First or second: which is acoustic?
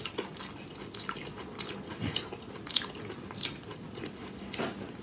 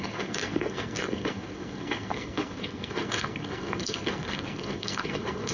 first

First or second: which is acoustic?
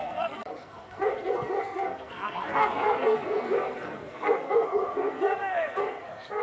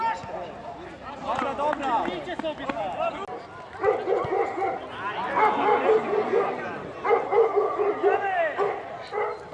second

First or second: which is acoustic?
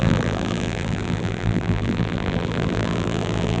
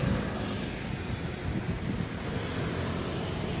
second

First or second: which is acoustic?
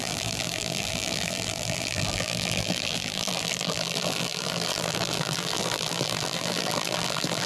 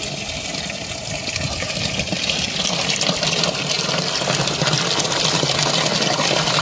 second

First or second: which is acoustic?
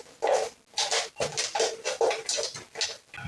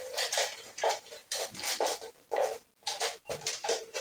first